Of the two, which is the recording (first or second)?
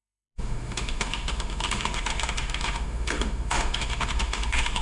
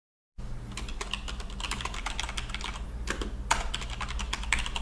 second